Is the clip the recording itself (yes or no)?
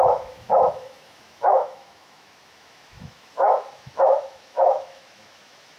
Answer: no